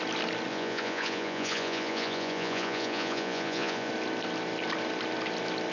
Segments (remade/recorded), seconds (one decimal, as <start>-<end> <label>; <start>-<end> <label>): 0.0-0.5 recorded; 0.5-3.9 remade; 3.9-5.7 recorded